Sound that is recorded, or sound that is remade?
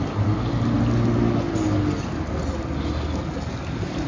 recorded